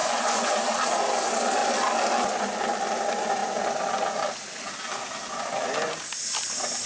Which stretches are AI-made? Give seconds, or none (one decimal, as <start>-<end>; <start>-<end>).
0.0-0.5